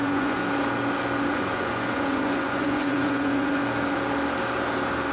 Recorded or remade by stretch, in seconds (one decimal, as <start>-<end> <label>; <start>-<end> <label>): 0.0-0.4 remade; 0.4-1.3 recorded; 1.3-3.6 remade; 3.6-5.1 recorded